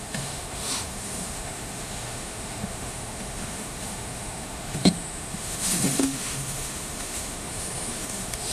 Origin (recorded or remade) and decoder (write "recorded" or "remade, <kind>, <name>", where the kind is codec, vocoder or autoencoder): remade, autoencoder, DAC-VAE